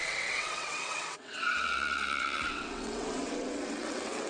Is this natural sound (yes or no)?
no